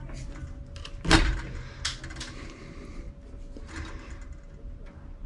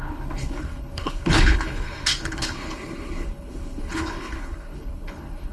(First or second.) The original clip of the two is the first